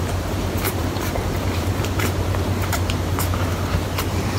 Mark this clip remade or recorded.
remade